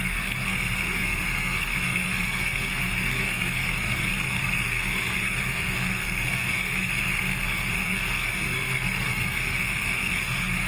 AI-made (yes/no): yes